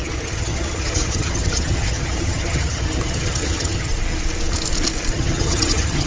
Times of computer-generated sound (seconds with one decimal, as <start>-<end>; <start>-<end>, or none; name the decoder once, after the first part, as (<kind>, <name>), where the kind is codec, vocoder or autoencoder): 0.0-3.9 (vocoder, HiFi-GAN); 5.1-6.1